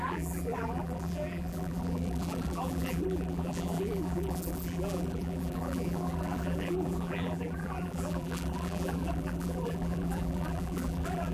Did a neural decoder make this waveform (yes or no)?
yes